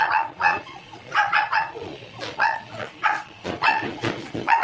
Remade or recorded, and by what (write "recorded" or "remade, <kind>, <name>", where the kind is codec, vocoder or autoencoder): remade, vocoder, Vocos